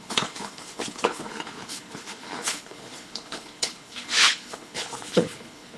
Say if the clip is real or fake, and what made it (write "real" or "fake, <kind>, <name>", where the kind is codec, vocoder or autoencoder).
fake, codec, HILCodec